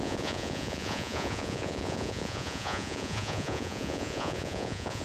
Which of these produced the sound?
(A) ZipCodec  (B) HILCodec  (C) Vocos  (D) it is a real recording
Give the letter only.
C